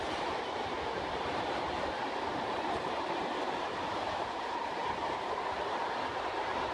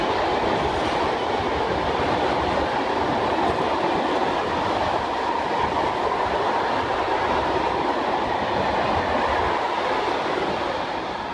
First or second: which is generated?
first